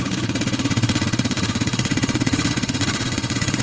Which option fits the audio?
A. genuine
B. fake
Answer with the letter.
B